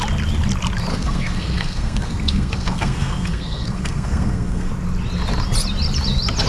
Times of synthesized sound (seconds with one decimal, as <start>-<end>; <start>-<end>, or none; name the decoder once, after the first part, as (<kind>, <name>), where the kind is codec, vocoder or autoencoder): 0.9-4.7 (codec, SNAC)